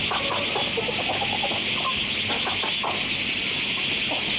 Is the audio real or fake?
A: real